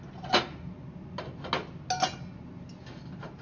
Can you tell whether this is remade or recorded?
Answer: recorded